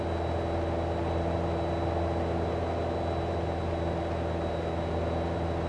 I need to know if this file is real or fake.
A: real